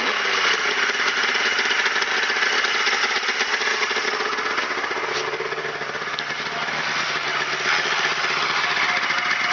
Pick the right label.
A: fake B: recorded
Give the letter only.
B